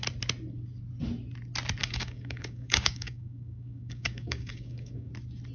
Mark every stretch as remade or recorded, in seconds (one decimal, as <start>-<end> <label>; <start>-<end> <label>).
0.0-1.8 recorded; 1.8-5.1 remade; 5.1-5.5 recorded